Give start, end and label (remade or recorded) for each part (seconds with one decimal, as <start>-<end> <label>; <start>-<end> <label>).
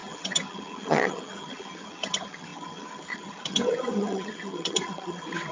0.0-5.5 remade